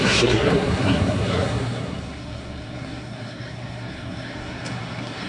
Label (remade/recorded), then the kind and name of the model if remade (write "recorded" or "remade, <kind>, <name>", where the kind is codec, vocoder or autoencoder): remade, codec, SNAC